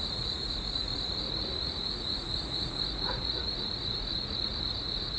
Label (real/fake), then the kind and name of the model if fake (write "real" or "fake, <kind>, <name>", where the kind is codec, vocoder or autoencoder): fake, vocoder, Vocos